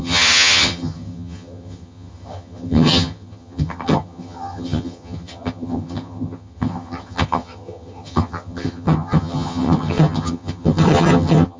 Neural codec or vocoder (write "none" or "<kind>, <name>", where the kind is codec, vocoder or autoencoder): vocoder, HiFi-GAN